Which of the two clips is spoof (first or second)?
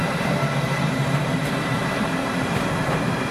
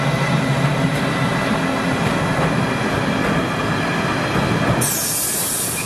first